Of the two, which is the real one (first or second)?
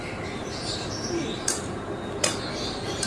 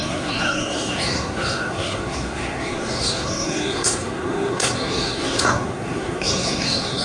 first